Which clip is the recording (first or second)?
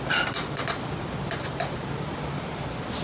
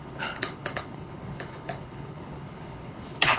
first